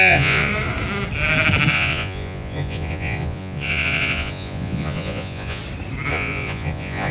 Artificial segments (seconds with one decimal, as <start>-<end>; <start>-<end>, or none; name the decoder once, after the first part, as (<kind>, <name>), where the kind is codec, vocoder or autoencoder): 0.0-0.5 (vocoder, Vocos); 1.7-5.6; 6.1-7.1